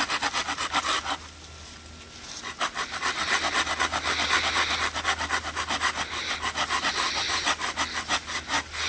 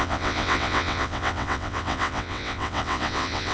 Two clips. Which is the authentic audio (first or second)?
first